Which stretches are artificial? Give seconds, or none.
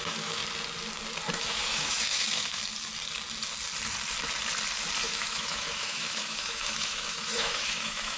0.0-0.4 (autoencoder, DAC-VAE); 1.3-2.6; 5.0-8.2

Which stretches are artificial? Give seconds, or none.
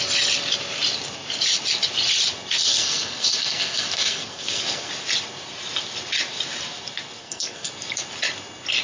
2.7-4.9 (codec, SNAC); 7.2-7.7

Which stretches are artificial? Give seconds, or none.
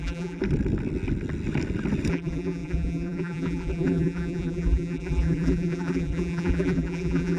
0.0-0.4 (vocoder, BigVGAN v2); 2.1-7.4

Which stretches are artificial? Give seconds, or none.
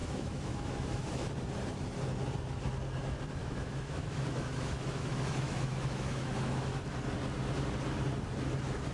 0.0-1.3 (autoencoder, DAC-VAE); 3.4-6.8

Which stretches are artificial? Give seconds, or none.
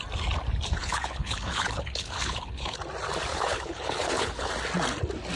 0.8-2.8 (codec, HILCodec); 3.3-4.5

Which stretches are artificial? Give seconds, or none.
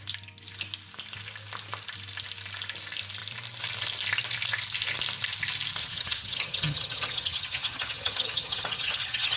5.8-9.4 (vocoder, HiFi-GAN)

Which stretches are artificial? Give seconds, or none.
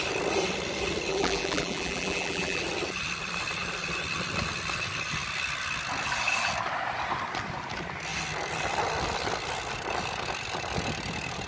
1.1-2.6 (vocoder, BigVGAN v2)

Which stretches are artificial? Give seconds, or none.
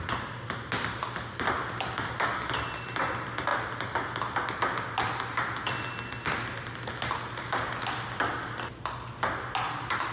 none